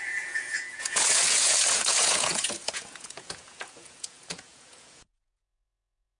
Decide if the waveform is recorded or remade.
remade